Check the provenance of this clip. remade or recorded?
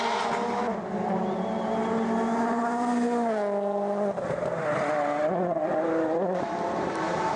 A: recorded